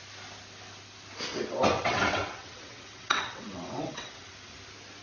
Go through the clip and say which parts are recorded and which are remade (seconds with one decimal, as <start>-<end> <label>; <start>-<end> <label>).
0.0-1.3 recorded; 1.3-4.3 remade; 4.3-5.0 recorded